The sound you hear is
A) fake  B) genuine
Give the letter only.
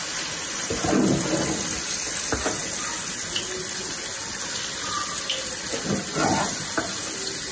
B